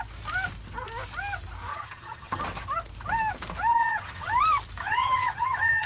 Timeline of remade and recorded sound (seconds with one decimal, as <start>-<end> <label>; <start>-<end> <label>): 0.0-1.7 recorded; 1.7-2.4 remade; 2.4-3.7 recorded; 3.7-4.3 remade; 4.3-4.8 recorded; 4.8-5.9 remade